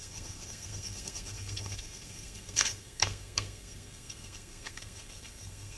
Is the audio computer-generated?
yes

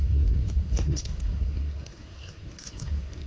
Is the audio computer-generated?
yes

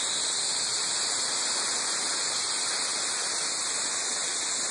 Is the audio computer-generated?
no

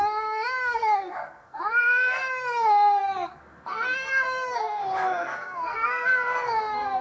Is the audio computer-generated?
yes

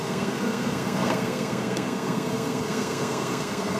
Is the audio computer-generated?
yes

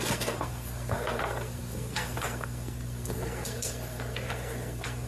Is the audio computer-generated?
yes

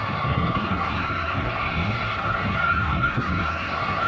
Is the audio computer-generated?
yes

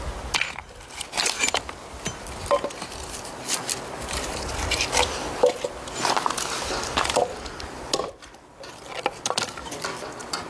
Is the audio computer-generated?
no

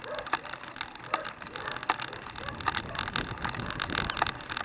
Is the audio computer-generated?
no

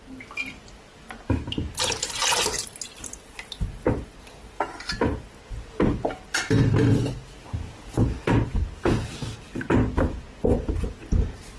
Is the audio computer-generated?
no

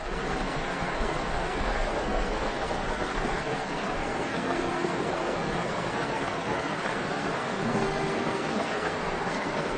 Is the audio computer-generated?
yes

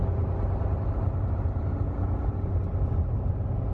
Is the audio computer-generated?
no